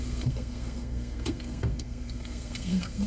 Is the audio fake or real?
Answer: fake